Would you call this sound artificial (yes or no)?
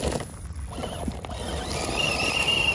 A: no